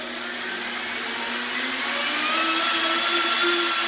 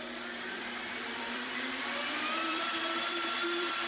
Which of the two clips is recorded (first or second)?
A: first